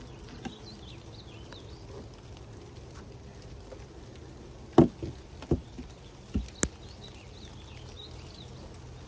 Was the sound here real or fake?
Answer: real